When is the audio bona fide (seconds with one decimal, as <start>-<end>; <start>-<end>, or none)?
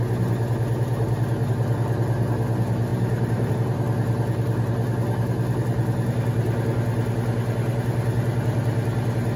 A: 0.0-2.9; 3.5-9.4